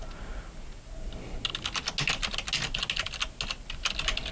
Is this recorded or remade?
recorded